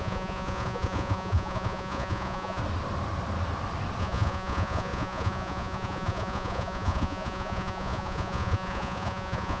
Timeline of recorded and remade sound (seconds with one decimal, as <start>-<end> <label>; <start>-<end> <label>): 0.0-2.6 remade; 2.6-4.0 recorded; 4.0-9.6 remade